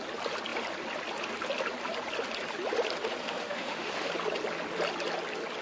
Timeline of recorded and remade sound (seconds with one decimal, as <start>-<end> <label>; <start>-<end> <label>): 0.0-3.2 recorded; 3.2-4.1 remade; 4.1-5.6 recorded